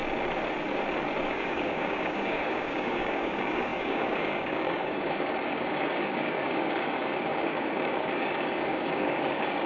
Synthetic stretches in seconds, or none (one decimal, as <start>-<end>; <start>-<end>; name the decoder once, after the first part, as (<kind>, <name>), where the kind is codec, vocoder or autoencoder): 1.3-9.7 (codec, DAC)